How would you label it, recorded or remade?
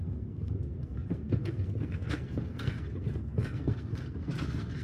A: remade